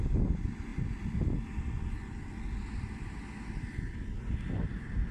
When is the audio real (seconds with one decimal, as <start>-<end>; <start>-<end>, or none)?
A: 0.0-5.1